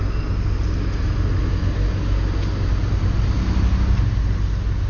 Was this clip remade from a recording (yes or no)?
no